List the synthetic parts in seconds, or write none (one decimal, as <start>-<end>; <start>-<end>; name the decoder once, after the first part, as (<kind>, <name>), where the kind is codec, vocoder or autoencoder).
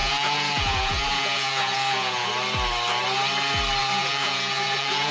0.0-2.3 (vocoder, Vocos); 3.8-5.1